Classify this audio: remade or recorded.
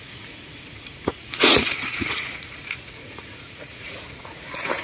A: remade